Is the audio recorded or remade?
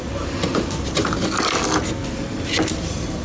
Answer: recorded